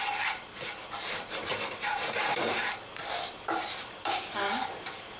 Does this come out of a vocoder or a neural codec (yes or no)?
yes